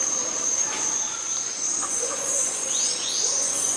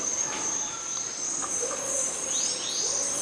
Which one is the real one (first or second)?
second